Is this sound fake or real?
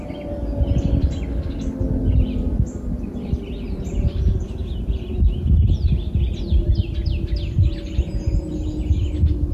real